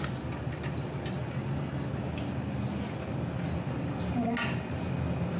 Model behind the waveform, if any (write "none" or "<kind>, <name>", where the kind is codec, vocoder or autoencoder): none